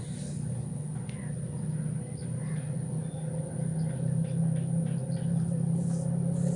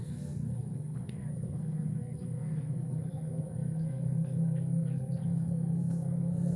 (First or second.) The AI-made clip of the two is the second